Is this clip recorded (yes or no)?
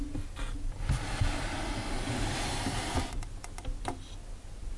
yes